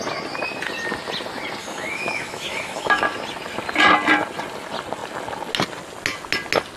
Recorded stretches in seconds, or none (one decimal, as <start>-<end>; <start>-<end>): 0.0-1.6; 3.0-6.8